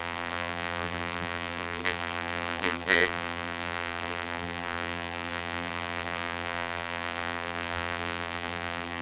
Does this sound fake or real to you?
fake